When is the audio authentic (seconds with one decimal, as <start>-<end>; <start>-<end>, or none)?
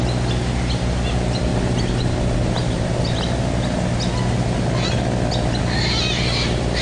0.0-6.8